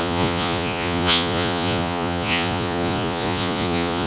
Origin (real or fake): fake